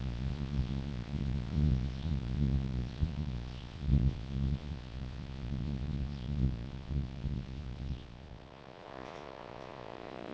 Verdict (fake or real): fake